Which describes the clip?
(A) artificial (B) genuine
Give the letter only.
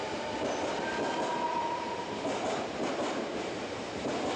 B